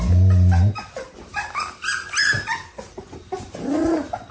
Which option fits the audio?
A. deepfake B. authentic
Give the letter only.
B